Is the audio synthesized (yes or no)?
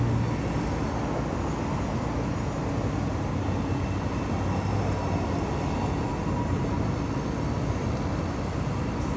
no